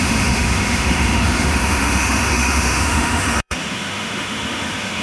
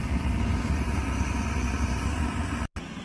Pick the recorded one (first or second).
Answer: second